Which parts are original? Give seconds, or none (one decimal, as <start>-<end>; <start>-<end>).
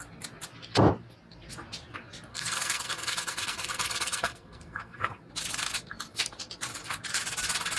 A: 0.0-2.3; 5.2-7.8